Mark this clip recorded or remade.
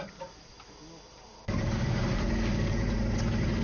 recorded